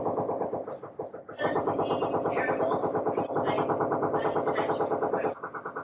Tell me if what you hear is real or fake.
real